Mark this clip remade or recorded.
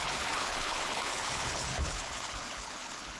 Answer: remade